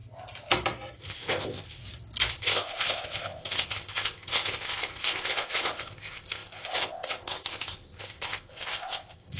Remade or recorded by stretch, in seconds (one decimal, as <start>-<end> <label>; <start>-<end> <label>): 0.0-1.0 recorded; 1.0-1.8 remade; 1.8-2.3 recorded; 2.3-9.4 remade

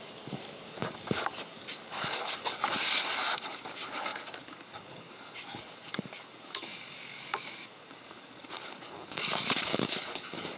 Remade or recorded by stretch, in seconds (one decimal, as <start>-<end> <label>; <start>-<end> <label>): 0.0-10.6 remade

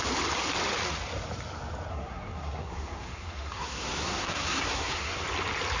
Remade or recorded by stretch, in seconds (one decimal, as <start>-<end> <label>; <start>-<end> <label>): 0.0-1.9 recorded; 1.9-5.2 remade; 5.2-5.8 recorded

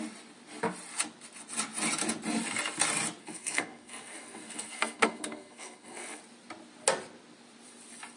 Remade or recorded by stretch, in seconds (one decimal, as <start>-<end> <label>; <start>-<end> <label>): 0.0-3.2 recorded; 3.2-6.2 remade; 6.2-8.2 recorded

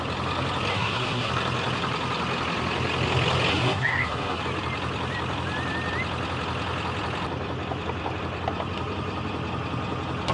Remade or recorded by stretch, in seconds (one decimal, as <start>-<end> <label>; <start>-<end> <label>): 0.0-0.7 recorded; 0.7-1.3 remade; 1.3-3.5 recorded; 3.5-4.4 remade; 4.4-10.3 recorded

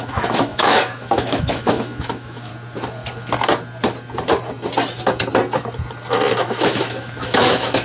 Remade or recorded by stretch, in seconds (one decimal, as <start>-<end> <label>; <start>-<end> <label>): 0.0-2.5 remade; 2.5-6.3 recorded; 6.3-7.8 remade

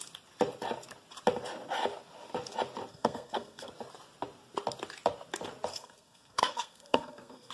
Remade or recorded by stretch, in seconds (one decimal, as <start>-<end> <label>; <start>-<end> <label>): 0.0-2.9 recorded; 2.9-3.7 remade; 3.7-5.7 recorded; 5.7-7.5 remade

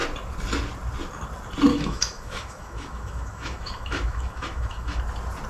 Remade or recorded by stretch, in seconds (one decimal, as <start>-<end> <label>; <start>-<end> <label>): 0.0-1.7 recorded; 1.7-5.0 remade; 5.0-5.5 recorded